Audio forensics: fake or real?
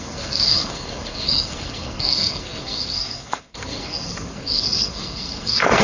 fake